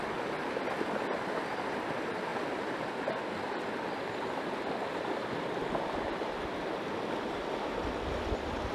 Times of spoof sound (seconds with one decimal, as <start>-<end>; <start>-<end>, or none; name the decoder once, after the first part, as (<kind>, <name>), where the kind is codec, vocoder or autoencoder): none